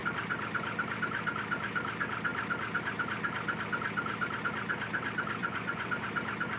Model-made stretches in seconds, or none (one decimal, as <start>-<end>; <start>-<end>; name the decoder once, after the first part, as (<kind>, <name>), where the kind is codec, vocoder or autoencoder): 5.4-5.9 (vocoder, Vocos)